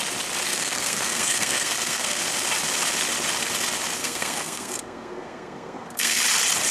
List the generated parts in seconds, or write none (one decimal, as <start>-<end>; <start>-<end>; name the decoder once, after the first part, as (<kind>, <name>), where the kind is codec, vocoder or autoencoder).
0.5-2.2 (codec, SNAC); 4.0-6.2